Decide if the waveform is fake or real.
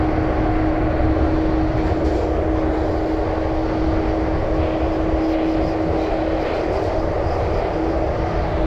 real